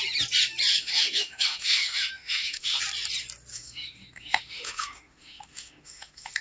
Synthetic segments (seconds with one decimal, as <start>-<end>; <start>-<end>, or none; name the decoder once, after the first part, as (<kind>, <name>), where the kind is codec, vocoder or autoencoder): 0.7-2.8 (autoencoder, DAC-VAE); 3.5-6.4